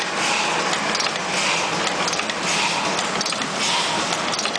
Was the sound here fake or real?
real